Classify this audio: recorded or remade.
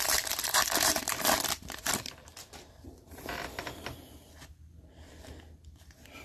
remade